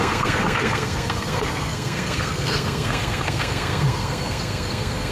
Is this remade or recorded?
remade